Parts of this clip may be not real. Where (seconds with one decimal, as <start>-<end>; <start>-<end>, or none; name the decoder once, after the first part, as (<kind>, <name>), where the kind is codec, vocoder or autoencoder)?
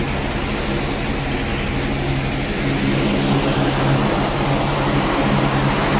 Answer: none